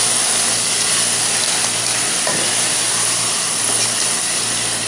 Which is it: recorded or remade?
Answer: recorded